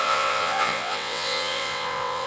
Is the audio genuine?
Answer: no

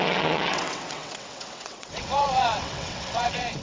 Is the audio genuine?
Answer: no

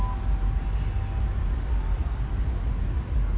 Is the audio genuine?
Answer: yes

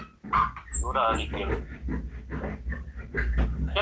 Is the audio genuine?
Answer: yes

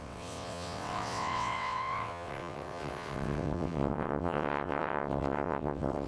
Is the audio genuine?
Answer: no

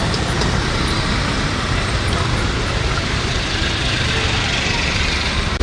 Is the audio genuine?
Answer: yes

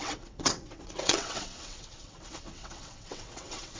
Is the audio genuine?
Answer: no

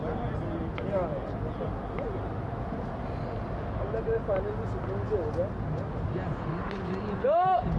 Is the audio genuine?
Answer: yes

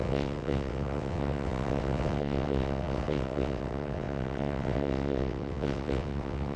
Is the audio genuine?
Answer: no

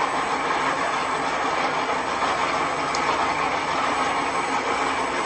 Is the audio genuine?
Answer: yes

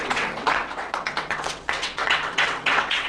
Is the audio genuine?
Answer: no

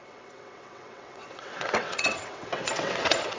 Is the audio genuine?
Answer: no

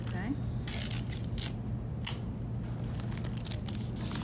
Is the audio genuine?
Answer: yes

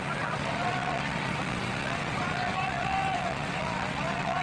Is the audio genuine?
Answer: no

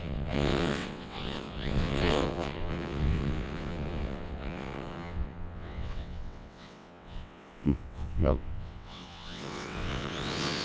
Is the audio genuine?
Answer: no